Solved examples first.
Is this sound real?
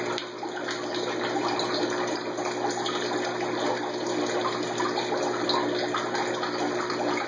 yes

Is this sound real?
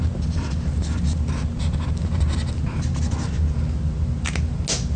yes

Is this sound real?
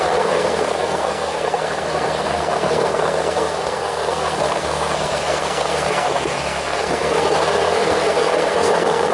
no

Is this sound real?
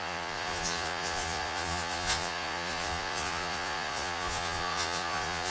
no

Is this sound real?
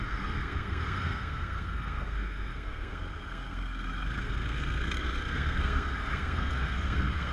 no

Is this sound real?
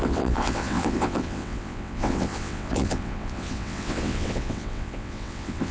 no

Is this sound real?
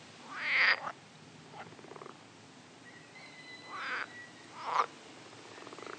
yes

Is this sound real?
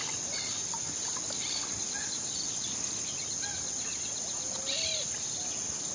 yes